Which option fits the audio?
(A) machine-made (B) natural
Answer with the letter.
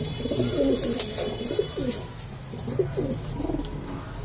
B